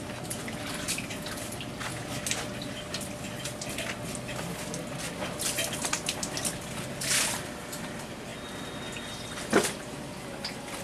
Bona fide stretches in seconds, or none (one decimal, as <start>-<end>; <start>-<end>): 0.0-10.8